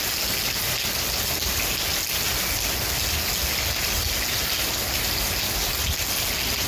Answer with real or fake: real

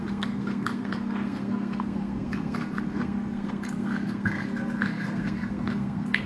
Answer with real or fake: fake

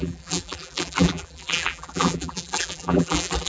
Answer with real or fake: fake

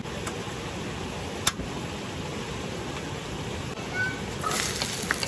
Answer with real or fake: real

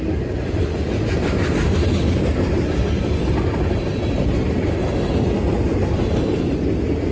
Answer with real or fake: real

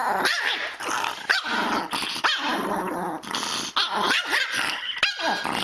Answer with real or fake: real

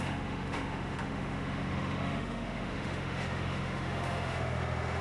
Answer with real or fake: fake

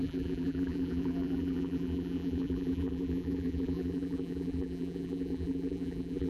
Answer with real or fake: fake